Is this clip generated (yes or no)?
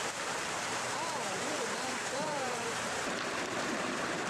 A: yes